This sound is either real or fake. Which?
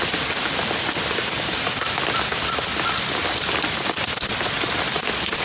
real